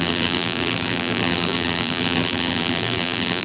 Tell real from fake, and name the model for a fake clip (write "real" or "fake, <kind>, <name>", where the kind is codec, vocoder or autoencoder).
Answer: fake, vocoder, BigVGAN v2